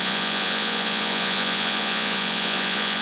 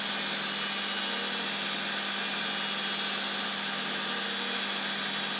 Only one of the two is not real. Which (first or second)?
first